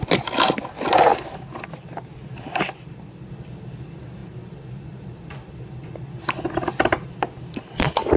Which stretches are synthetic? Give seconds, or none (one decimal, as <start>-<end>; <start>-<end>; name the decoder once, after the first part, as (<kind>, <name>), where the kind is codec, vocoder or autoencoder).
none